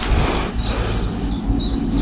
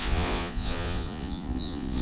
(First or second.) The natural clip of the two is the first